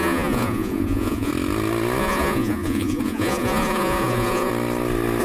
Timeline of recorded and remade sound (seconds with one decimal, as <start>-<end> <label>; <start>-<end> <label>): 0.0-1.3 remade; 1.3-2.0 recorded; 2.0-4.5 remade; 4.5-5.2 recorded